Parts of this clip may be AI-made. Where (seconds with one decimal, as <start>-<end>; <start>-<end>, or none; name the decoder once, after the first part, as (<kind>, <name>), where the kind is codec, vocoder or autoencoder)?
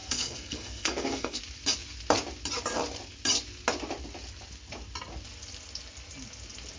0.0-1.4 (codec, SNAC)